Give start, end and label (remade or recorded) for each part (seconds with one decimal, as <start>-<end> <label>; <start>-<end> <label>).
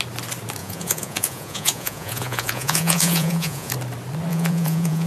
0.0-0.6 recorded; 0.6-3.7 remade; 3.7-4.3 recorded; 4.3-5.1 remade